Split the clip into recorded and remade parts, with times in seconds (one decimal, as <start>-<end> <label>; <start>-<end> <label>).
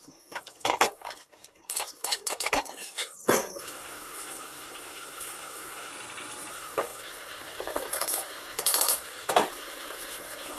0.0-5.9 remade; 5.9-6.5 recorded; 6.5-10.6 remade